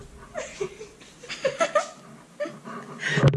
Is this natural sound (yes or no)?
yes